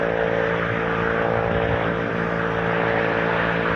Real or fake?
real